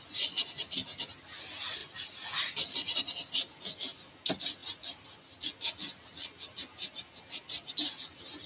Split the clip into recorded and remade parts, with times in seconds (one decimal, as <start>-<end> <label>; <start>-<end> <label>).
0.0-1.8 recorded; 1.8-2.5 remade; 2.5-8.5 recorded